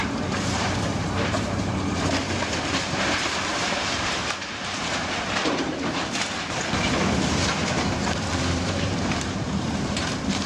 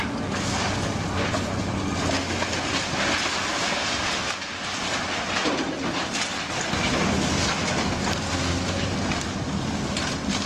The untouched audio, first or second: second